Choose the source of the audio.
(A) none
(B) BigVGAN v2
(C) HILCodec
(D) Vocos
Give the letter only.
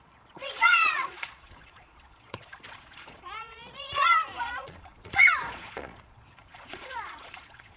D